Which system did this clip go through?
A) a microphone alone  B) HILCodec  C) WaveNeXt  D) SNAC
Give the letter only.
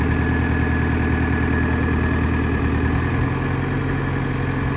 A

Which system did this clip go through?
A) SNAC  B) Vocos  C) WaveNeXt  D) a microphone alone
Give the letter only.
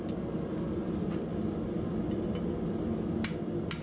D